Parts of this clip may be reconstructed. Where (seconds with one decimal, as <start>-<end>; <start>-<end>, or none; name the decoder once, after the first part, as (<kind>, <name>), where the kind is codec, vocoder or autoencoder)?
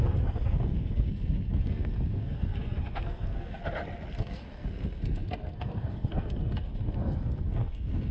0.0-3.6 (codec, SNAC); 4.2-8.1